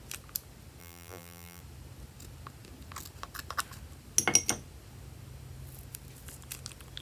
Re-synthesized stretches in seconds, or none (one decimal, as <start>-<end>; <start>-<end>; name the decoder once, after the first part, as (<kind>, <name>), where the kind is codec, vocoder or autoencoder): 0.8-1.6 (vocoder, BigVGAN v2)